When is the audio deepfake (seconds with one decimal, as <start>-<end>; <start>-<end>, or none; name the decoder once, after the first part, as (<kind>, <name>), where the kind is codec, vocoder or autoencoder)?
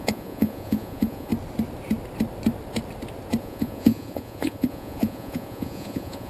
0.0-1.3 (vocoder, Vocos); 3.4-6.3